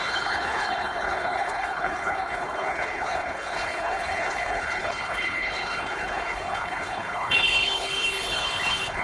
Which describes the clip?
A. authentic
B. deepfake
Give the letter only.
B